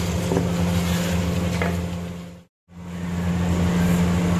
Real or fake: real